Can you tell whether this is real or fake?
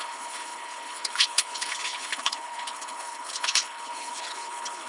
fake